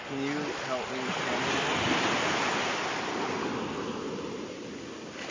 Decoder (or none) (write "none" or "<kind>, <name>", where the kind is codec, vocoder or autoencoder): none